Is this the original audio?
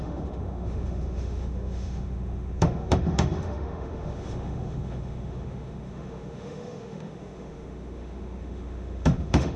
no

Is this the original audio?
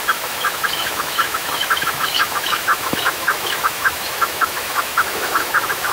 no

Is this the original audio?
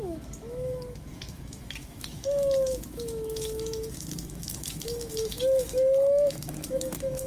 no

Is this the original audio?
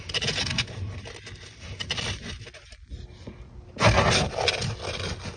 yes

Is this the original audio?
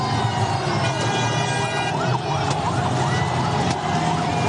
yes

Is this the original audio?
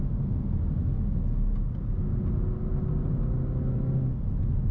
yes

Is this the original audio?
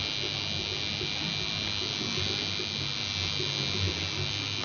yes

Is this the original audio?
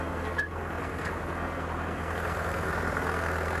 no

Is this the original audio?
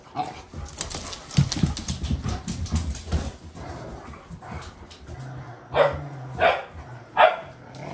yes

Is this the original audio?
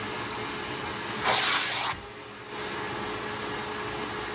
yes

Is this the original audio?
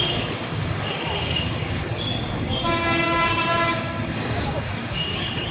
no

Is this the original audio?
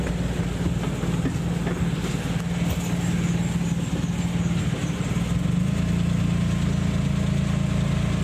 yes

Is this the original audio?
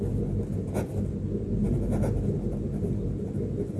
yes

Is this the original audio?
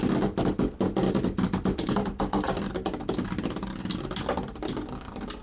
yes